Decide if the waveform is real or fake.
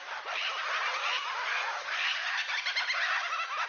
real